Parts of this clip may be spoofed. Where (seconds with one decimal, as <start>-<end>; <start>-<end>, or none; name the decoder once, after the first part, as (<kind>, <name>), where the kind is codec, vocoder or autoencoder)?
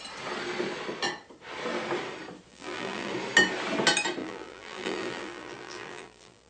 2.5-3.1 (vocoder, BigVGAN v2); 4.2-6.5